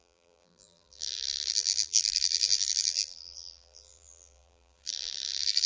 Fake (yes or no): yes